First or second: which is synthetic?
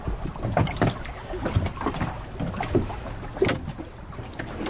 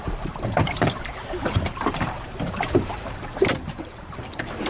second